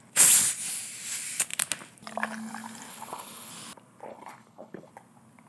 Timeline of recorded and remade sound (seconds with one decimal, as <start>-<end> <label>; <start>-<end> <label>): 0.0-2.9 recorded; 2.9-3.5 remade; 3.5-4.1 recorded; 4.1-4.9 remade; 4.9-5.5 recorded

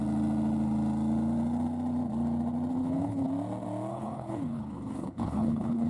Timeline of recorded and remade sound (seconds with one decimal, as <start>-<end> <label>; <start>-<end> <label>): 0.0-2.7 recorded; 2.7-3.3 remade; 3.3-3.9 recorded; 3.9-5.9 remade

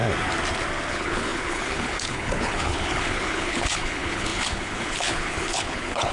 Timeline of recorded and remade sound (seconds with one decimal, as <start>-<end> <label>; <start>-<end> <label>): 0.0-0.9 recorded; 0.9-6.1 remade

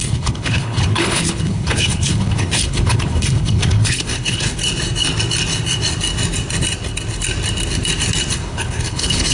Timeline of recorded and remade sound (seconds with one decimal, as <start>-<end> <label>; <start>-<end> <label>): 0.0-4.6 remade; 4.6-8.3 recorded; 8.3-9.3 remade

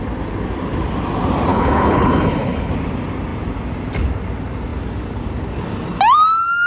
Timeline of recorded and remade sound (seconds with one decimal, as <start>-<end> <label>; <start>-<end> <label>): 0.0-1.5 recorded; 1.5-2.7 remade; 2.7-6.7 recorded

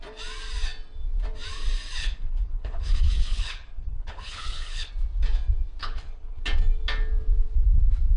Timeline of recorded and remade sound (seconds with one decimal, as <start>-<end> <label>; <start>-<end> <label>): 0.0-2.0 recorded; 2.0-4.9 remade; 4.9-5.8 recorded; 5.8-6.4 remade; 6.4-8.2 recorded

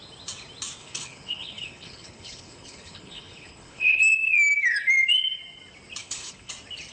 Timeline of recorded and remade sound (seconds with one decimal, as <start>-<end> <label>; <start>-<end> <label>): 0.0-0.8 recorded; 0.8-4.0 remade; 4.0-6.0 recorded; 6.0-6.5 remade; 6.5-6.9 recorded